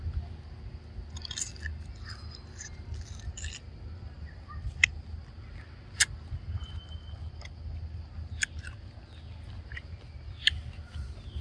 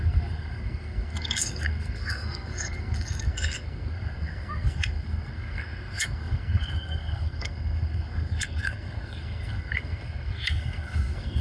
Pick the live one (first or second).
first